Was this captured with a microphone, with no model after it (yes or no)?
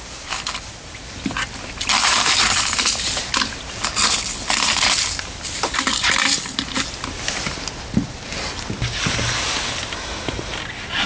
yes